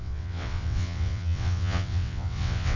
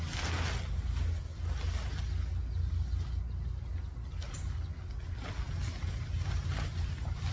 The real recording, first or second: second